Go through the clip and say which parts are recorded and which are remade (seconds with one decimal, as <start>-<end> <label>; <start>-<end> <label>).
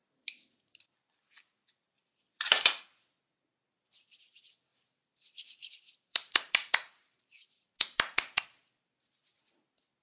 0.0-4.7 recorded; 4.7-7.7 remade; 7.7-10.0 recorded